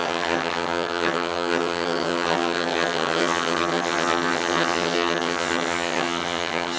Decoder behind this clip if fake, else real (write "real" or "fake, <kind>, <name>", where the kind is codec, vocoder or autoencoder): fake, vocoder, HiFi-GAN